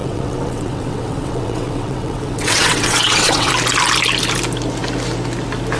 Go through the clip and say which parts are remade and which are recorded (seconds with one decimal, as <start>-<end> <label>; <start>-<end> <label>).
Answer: 0.0-3.5 remade; 3.5-5.8 recorded